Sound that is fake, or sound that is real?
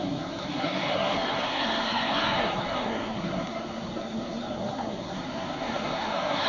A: fake